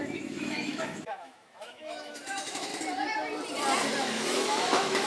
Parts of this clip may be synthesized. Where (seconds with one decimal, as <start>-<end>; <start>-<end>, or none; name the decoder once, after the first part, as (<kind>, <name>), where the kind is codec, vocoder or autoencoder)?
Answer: 0.0-2.7 (autoencoder, DAC-VAE); 4.0-5.1